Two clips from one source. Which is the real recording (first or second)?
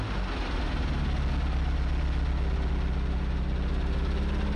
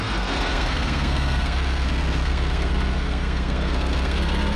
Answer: first